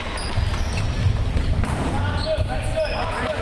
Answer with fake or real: real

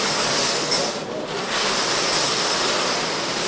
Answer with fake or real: real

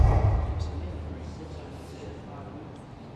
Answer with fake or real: real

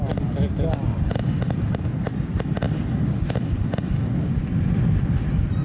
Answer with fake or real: real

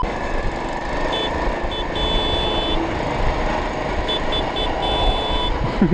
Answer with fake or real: real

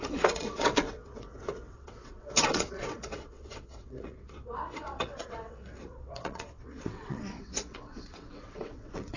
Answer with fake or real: fake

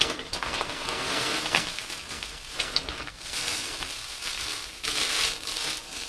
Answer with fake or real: fake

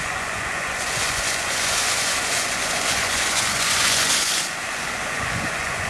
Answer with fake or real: fake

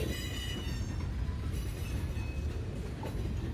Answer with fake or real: real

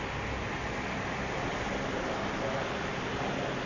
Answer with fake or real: real